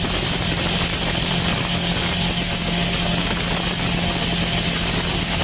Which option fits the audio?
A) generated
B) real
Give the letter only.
B